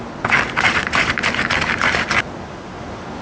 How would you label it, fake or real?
real